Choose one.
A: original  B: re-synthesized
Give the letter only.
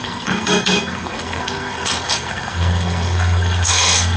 B